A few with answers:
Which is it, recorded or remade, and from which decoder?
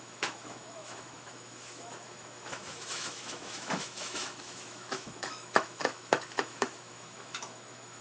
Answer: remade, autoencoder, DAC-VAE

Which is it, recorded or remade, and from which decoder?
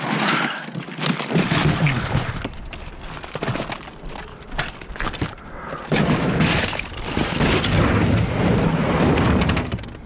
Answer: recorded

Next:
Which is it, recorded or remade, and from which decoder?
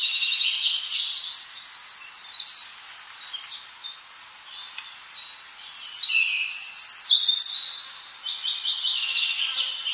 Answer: recorded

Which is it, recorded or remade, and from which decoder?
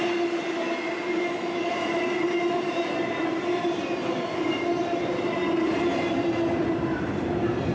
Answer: recorded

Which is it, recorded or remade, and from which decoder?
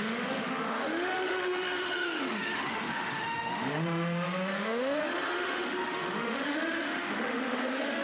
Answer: remade, autoencoder, DAC-VAE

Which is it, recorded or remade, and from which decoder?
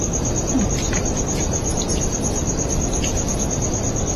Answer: recorded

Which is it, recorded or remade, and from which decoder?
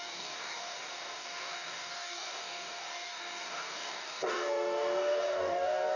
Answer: remade, codec, DAC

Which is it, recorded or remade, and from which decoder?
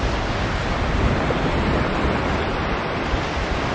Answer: recorded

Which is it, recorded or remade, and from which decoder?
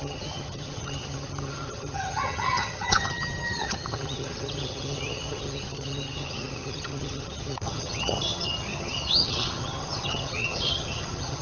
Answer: remade, vocoder, HiFi-GAN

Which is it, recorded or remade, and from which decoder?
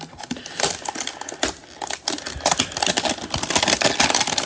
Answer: recorded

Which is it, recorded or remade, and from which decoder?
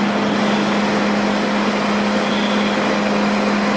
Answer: recorded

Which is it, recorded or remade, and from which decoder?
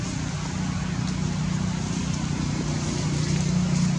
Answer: recorded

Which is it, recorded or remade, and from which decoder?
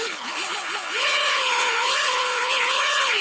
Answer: remade, codec, HILCodec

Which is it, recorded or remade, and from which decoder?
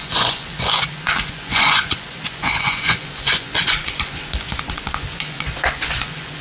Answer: remade, vocoder, Vocos